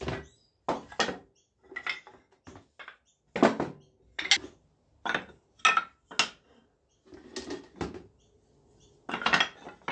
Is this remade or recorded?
recorded